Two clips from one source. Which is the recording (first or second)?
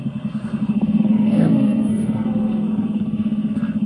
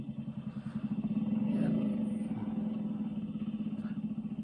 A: second